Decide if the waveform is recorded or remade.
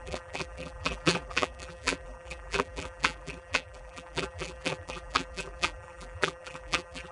remade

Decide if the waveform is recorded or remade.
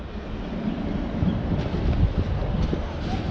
recorded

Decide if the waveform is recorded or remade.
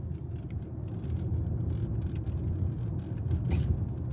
recorded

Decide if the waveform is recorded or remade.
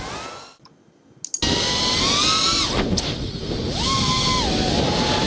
recorded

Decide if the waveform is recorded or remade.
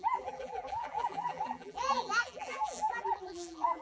remade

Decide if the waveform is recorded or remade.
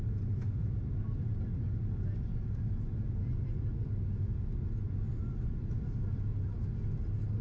recorded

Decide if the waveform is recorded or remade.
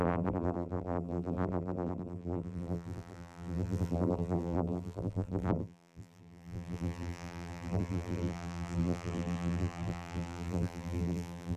remade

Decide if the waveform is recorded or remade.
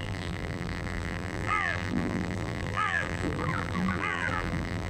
remade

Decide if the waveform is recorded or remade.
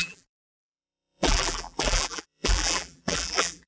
remade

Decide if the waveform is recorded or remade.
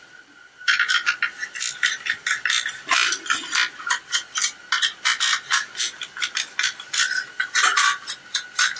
recorded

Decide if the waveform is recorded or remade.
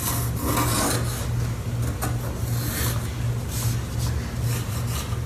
recorded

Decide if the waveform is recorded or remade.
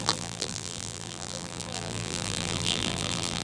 remade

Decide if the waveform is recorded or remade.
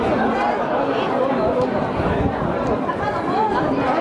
recorded